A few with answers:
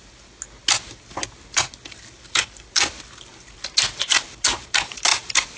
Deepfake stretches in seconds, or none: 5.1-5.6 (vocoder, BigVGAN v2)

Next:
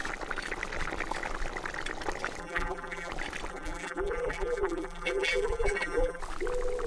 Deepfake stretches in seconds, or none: 2.4-3.1 (vocoder, BigVGAN v2); 3.5-6.2

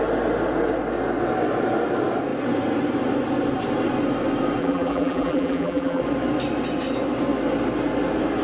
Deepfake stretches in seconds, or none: 4.6-6.0 (vocoder, BigVGAN v2)

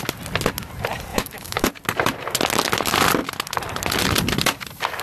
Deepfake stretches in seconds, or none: 1.1-1.7 (autoencoder, DAC-VAE)

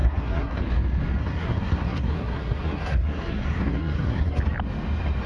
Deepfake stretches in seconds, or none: 0.0-0.6 (codec, SNAC); 1.2-4.4

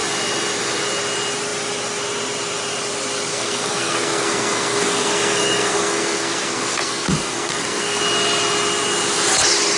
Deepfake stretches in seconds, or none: 3.3-8.0 (codec, SNAC)